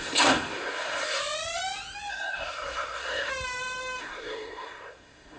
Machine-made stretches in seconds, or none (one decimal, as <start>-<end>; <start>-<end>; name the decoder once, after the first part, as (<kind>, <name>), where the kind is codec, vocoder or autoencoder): 0.0-1.2 (codec, SNAC); 2.1-3.3; 4.0-5.4